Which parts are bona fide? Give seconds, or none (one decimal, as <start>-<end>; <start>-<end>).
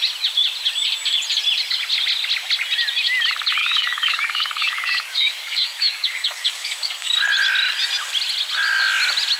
0.0-3.6; 7.1-9.4